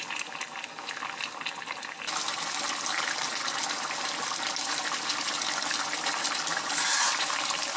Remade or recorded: recorded